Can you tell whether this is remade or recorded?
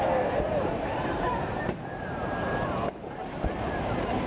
remade